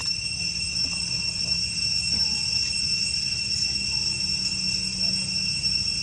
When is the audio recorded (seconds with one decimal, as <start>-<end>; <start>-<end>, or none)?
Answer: 0.0-4.3